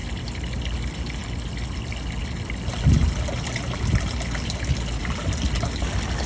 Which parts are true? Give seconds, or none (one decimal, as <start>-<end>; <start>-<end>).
0.0-6.3